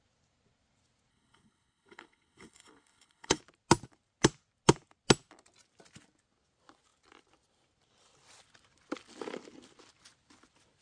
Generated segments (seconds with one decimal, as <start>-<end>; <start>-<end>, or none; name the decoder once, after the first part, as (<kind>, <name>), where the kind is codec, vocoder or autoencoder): 1.1-3.4 (codec, HILCodec)